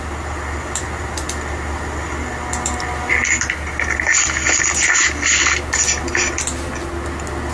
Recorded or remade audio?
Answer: recorded